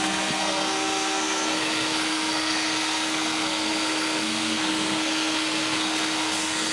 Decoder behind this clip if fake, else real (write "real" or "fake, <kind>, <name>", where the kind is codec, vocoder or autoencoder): fake, codec, SNAC